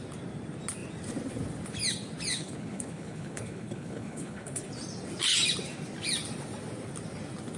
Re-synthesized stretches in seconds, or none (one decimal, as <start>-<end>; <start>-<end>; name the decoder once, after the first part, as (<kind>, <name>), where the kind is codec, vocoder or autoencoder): 2.3-4.7 (codec, HILCodec)